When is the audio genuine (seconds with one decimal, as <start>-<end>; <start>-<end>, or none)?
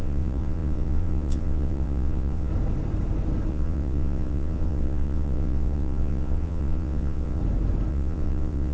2.5-3.5; 7.4-7.9